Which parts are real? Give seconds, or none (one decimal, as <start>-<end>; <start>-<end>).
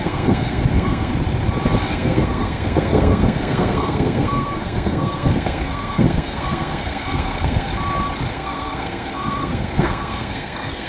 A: 1.1-1.9; 7.7-8.3